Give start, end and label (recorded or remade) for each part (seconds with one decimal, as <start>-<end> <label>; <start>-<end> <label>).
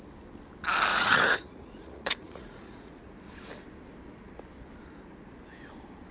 0.0-0.9 recorded; 0.9-3.1 remade; 3.1-6.1 recorded